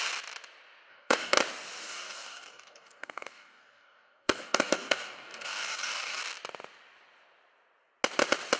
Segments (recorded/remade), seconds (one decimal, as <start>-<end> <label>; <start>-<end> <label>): 0.0-0.9 recorded; 0.9-1.4 remade; 1.4-1.8 recorded; 1.8-6.2 remade; 6.2-8.6 recorded